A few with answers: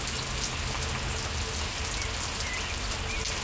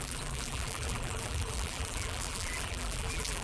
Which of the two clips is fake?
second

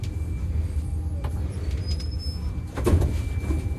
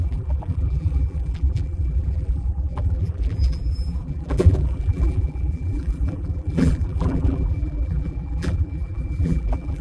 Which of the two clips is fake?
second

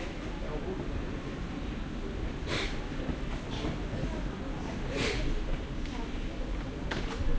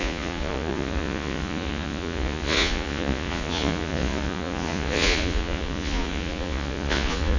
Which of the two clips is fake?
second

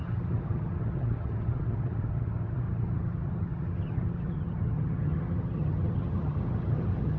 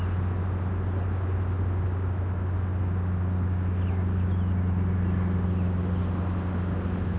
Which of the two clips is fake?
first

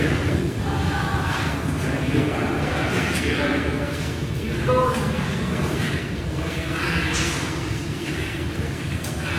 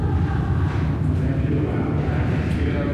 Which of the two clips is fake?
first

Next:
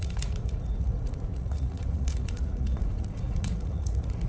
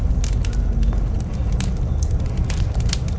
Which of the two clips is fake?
first